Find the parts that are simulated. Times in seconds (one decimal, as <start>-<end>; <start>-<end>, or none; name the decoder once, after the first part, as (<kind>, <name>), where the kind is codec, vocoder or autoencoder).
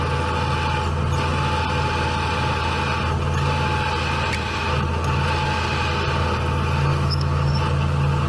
6.9-7.5 (autoencoder, DAC-VAE)